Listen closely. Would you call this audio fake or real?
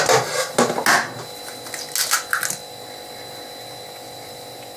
real